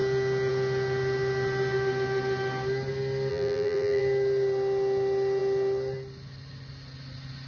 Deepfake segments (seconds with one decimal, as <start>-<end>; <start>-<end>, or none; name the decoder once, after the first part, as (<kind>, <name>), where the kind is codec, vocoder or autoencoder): 3.3-4.0 (vocoder, BigVGAN v2)